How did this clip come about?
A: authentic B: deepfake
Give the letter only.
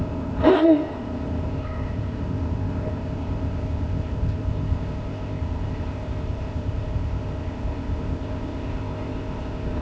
B